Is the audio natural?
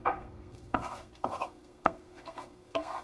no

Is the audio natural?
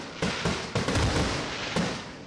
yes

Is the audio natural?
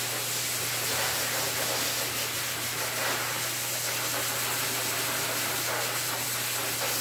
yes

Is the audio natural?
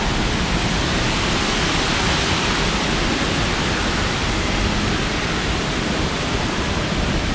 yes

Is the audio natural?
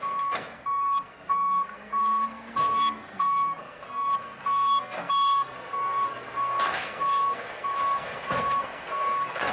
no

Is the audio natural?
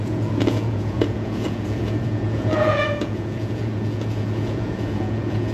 no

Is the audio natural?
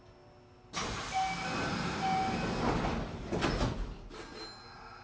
yes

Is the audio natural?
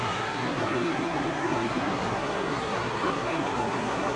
no